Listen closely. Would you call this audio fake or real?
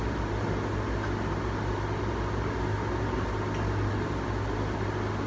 real